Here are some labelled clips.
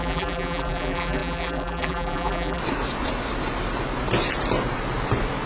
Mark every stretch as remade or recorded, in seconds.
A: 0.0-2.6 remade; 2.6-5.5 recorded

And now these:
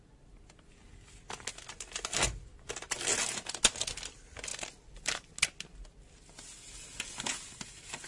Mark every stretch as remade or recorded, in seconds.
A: 0.0-8.1 recorded

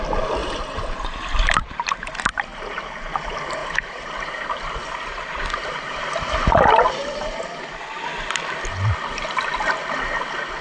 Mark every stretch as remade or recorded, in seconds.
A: 0.0-0.4 recorded; 0.4-1.3 remade; 1.3-2.5 recorded; 2.5-3.1 remade; 3.1-3.6 recorded; 3.6-6.0 remade; 6.0-10.6 recorded

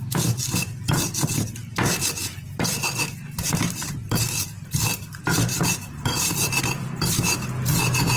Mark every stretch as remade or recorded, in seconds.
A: 0.0-4.0 recorded; 4.0-6.6 remade; 6.6-8.2 recorded

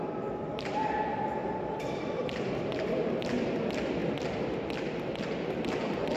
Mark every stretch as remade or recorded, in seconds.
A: 0.0-6.2 remade

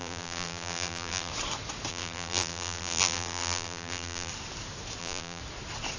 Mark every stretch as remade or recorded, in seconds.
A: 0.0-1.3 remade; 1.3-1.9 recorded; 1.9-4.3 remade; 4.3-5.0 recorded; 5.0-5.4 remade; 5.4-6.0 recorded

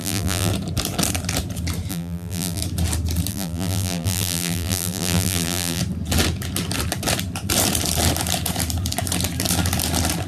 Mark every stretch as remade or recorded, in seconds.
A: 0.0-0.5 remade; 0.5-1.9 recorded; 1.9-2.6 remade; 2.6-3.3 recorded; 3.3-5.8 remade; 5.8-10.3 recorded

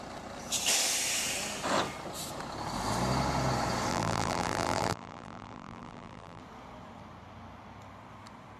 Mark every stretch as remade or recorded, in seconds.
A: 0.0-3.9 recorded; 3.9-6.4 remade; 6.4-8.6 recorded